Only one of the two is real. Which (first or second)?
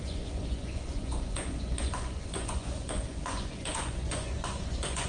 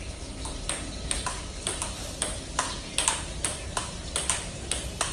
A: second